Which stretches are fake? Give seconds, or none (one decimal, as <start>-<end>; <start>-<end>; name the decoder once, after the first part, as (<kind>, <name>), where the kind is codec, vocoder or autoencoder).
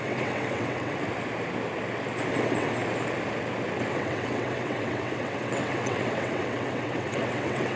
0.0-1.0 (vocoder, WaveNeXt); 2.3-2.8; 3.9-7.8